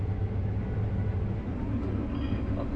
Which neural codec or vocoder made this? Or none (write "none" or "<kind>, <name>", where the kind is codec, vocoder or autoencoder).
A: none